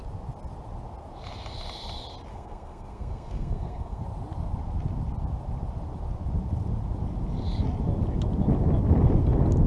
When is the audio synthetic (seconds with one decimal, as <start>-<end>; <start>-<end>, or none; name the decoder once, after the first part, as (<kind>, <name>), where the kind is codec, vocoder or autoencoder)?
2.3-4.0 (codec, SNAC)